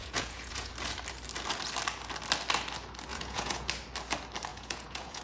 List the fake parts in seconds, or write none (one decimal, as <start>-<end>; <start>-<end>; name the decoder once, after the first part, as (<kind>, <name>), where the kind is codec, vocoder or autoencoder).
0.0-0.7 (vocoder, Vocos); 3.1-3.7; 4.5-5.2